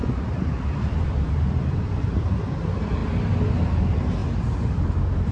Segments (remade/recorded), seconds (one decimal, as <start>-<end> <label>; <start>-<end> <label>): 0.0-2.4 remade; 2.4-5.3 recorded